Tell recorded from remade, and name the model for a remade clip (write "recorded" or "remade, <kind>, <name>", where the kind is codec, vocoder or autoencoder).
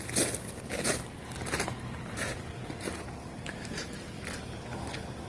recorded